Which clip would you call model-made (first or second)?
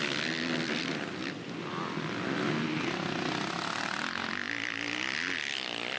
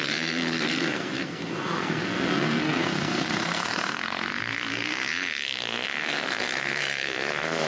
second